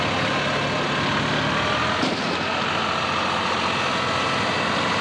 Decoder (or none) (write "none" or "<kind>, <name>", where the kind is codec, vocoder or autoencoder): none